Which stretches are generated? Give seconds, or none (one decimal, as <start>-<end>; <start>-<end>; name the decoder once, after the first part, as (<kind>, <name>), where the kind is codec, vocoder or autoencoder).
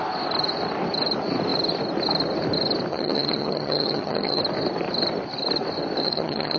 2.9-4.4 (vocoder, HiFi-GAN); 6.0-6.6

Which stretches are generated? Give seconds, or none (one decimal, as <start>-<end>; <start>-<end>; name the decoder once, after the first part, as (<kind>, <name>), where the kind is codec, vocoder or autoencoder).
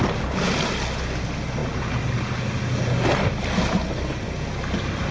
none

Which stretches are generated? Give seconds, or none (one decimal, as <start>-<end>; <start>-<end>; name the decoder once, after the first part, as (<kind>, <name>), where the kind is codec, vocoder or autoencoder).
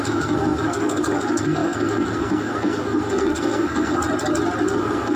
0.0-4.0 (codec, SNAC); 4.7-5.2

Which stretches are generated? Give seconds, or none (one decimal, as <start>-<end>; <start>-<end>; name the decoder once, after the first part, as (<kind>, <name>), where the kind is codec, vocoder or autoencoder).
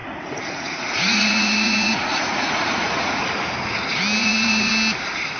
0.0-3.2 (vocoder, Vocos); 4.2-4.7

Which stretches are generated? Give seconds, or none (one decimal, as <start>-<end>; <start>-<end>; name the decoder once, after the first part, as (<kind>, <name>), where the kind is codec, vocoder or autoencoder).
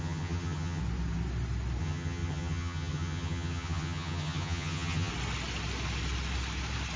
0.0-0.8 (vocoder, HiFi-GAN); 1.8-5.1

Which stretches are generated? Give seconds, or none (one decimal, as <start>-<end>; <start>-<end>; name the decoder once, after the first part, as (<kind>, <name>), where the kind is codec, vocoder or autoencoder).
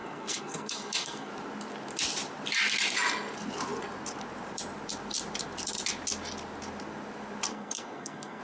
0.0-1.3 (codec, SNAC); 7.5-8.4